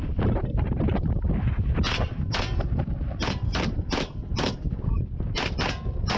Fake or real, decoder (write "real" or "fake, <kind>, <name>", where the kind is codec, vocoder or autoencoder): fake, vocoder, BigVGAN v2